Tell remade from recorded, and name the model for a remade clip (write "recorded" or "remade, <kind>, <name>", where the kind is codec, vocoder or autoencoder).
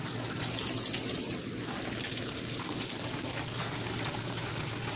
recorded